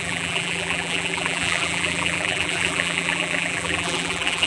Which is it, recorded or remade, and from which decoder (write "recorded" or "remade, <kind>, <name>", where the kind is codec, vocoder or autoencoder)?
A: remade, vocoder, BigVGAN v2